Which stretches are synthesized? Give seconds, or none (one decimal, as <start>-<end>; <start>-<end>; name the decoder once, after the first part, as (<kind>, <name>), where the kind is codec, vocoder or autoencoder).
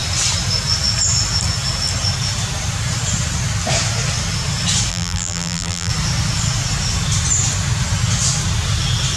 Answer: 4.9-5.9 (vocoder, BigVGAN v2)